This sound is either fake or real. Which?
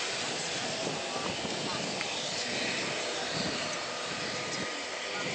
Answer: real